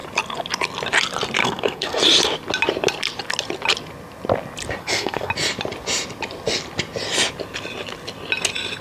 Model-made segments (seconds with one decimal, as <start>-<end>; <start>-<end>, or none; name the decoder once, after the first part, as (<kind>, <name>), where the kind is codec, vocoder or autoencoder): 1.4-2.0 (codec, SNAC); 4.8-5.3